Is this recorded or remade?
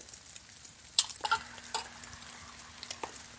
recorded